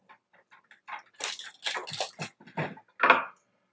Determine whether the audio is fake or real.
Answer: real